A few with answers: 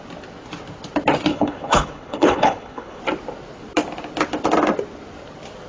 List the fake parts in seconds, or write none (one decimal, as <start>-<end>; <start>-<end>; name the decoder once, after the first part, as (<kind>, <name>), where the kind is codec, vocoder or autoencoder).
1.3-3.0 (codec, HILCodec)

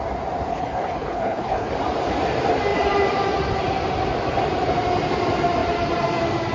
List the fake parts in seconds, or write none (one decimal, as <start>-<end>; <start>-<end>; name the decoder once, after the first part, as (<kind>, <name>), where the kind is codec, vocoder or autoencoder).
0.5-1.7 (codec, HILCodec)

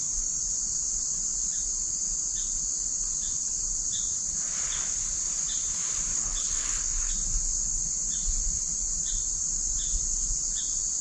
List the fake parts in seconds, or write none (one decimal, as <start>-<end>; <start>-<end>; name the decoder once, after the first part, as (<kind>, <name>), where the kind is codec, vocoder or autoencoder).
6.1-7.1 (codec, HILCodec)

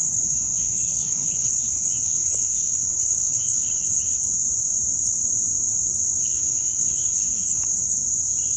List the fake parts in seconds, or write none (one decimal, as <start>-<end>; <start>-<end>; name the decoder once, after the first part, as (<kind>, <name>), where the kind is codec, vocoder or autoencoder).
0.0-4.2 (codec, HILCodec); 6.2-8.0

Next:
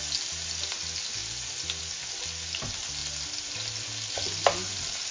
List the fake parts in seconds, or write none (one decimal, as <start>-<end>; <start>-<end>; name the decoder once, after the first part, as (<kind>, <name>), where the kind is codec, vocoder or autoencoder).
none